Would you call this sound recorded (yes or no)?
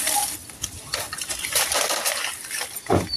yes